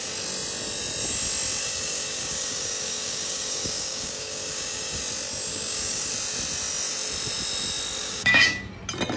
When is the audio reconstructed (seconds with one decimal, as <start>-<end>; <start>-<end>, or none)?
1.6-5.0; 5.5-6.1; 8.0-8.7